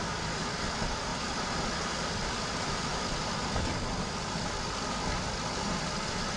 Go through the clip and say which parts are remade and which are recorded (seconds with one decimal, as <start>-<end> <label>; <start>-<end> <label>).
0.0-6.4 recorded